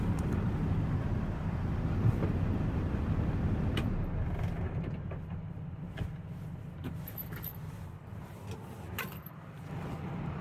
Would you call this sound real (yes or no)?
no